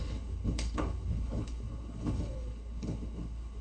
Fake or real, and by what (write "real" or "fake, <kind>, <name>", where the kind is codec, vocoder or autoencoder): fake, codec, HILCodec